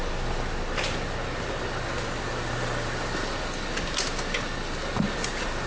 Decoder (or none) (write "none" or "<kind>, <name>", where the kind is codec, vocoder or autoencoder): none